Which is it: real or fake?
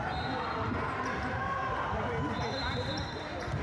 real